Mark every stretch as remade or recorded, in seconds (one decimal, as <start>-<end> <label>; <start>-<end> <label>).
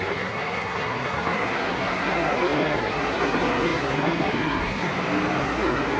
0.0-4.9 remade; 4.9-5.4 recorded; 5.4-6.0 remade